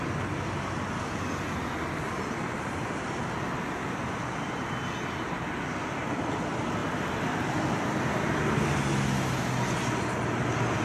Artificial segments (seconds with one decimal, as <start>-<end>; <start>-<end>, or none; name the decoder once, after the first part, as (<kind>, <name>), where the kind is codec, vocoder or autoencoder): none